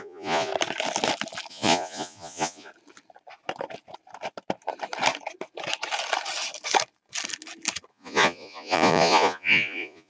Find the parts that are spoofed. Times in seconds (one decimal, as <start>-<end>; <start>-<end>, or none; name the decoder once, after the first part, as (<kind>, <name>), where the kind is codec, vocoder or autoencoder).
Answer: 0.0-0.5 (vocoder, Vocos); 1.5-2.7; 7.9-10.1